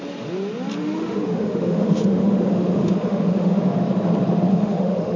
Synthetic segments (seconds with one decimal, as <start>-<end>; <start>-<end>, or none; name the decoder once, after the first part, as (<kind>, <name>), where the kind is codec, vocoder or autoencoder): 0.8-3.6 (autoencoder, DAC-VAE); 4.5-5.2